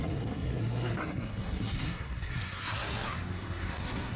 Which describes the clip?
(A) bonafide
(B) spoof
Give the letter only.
B